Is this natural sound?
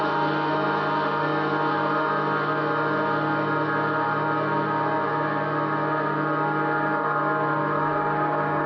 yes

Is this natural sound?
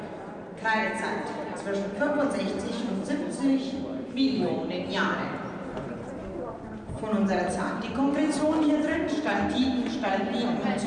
yes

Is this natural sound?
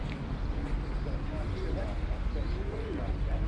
yes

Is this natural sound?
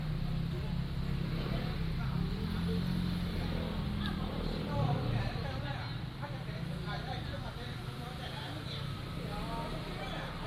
yes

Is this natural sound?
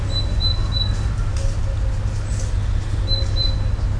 yes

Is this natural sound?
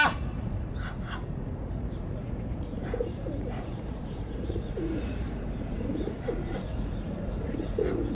no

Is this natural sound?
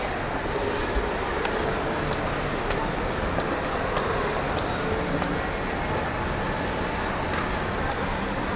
yes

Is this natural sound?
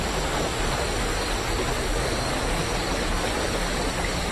yes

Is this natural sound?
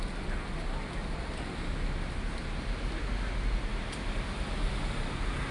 yes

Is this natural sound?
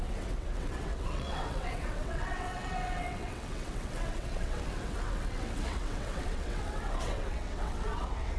no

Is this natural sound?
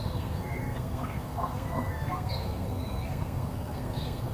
no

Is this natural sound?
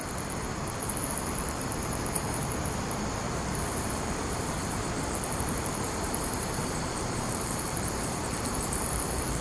no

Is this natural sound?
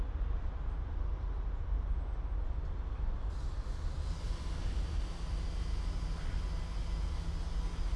yes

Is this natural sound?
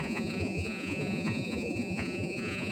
no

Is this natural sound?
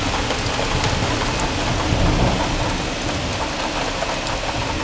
yes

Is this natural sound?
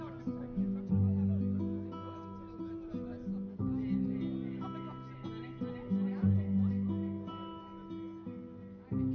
yes